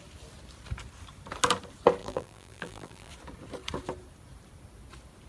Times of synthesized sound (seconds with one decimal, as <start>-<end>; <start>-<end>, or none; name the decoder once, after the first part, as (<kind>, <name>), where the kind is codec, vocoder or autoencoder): 2.0-3.1 (vocoder, BigVGAN v2)